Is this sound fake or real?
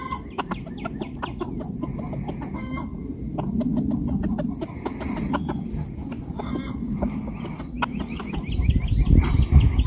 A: real